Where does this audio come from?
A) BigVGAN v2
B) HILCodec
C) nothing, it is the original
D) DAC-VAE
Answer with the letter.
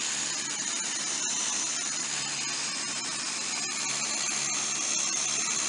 C